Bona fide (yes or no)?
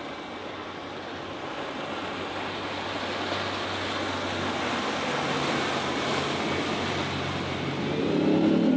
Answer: yes